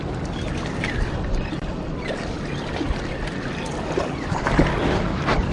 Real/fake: real